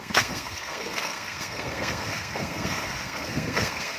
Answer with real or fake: fake